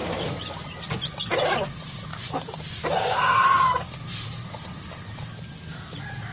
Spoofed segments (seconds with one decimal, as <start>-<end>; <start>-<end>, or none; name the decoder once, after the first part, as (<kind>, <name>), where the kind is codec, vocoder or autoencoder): 0.0-1.0 (vocoder, BigVGAN v2); 4.1-5.3